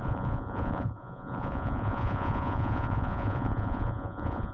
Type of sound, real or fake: fake